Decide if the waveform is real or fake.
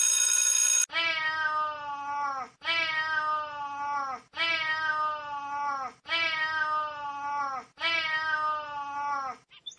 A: real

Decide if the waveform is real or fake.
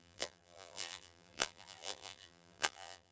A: fake